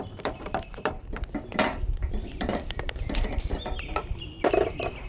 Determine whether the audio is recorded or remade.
remade